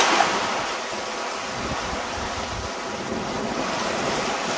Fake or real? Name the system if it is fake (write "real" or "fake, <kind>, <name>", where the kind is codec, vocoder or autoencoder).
real